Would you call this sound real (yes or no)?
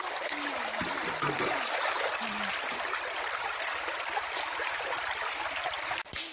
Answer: yes